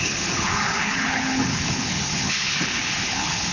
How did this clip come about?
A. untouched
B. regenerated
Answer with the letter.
B